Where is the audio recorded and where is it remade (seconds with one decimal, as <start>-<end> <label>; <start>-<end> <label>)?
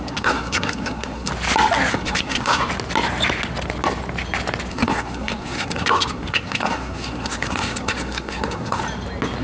0.0-1.3 remade; 1.3-1.9 recorded; 1.9-2.6 remade; 2.6-4.7 recorded; 4.7-8.8 remade; 8.8-9.4 recorded